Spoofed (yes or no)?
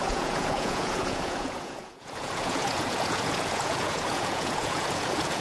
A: yes